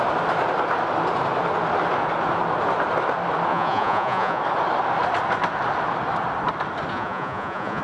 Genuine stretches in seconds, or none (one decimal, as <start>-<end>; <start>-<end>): 0.0-3.5; 4.4-6.9